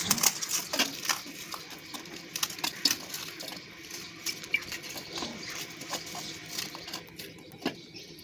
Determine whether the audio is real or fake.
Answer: real